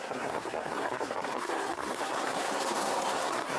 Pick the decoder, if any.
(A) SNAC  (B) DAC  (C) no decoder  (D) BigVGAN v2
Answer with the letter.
A